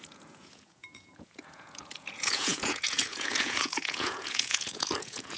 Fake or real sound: fake